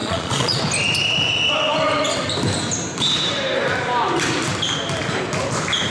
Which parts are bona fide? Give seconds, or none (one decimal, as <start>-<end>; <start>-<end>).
0.6-5.9

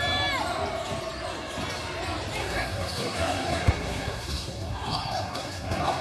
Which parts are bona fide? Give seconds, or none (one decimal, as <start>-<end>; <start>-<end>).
0.0-2.4

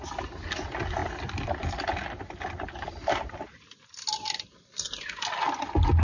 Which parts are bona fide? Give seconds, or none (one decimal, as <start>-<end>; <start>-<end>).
0.0-6.0

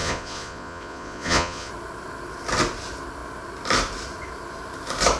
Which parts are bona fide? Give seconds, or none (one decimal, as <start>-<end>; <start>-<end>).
1.7-5.2

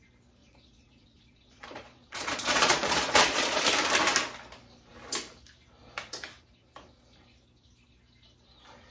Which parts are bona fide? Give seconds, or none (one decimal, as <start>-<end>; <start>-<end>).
0.0-0.4; 3.6-8.9

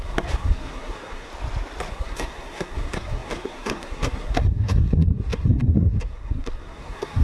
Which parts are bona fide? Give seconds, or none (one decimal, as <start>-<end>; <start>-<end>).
1.3-1.9

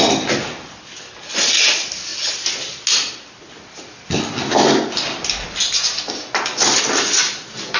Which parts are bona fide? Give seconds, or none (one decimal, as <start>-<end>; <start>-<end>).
0.0-7.8